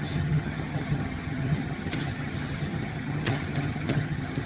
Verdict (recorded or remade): remade